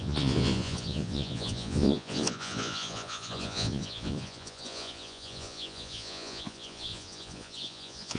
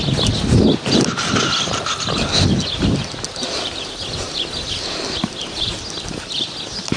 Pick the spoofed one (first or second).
first